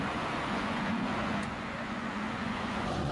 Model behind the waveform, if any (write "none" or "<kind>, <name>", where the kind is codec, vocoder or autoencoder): vocoder, Vocos